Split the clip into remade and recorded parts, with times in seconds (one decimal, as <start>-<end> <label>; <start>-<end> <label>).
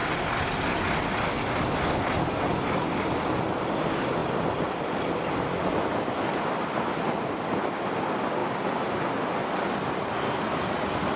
0.0-11.2 recorded